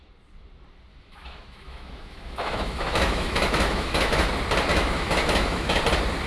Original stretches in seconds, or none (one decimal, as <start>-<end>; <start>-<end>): 0.0-0.9; 4.3-4.7; 5.8-6.3